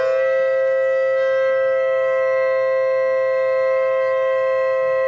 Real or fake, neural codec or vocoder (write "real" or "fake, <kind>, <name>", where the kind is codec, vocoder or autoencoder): real